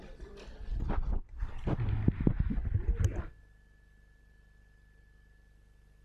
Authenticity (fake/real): real